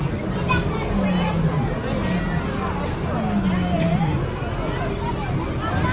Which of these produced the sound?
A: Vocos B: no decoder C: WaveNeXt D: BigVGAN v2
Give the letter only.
B